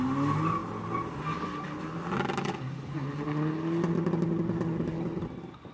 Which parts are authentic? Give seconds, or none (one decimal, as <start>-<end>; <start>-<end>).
0.0-5.7